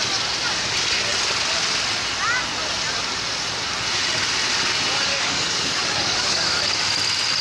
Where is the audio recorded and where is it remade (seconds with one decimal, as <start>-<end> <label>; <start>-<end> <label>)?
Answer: 0.0-5.1 recorded; 5.1-6.6 remade; 6.6-7.4 recorded